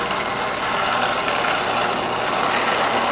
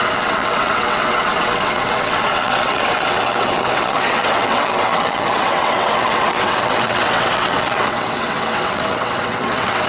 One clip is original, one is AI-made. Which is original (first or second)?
first